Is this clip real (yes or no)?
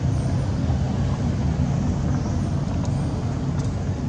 yes